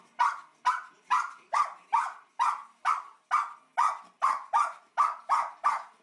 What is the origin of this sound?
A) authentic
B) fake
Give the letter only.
A